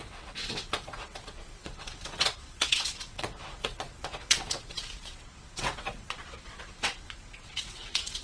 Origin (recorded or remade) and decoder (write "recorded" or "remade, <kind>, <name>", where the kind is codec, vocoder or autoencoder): remade, vocoder, WaveNeXt